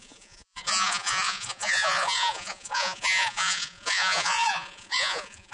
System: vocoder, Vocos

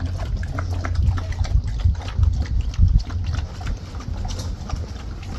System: none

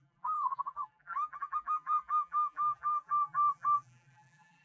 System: vocoder, BigVGAN v2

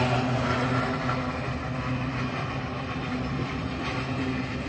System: none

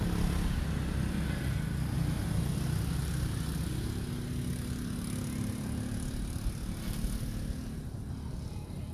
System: none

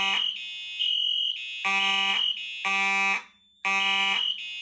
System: none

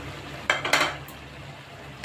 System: none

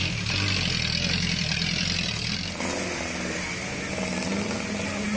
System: none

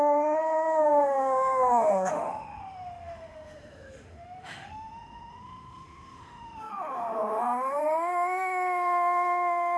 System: autoencoder, DAC-VAE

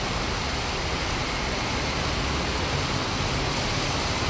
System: none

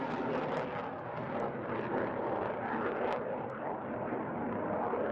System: none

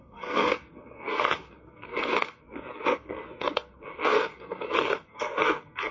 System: codec, SNAC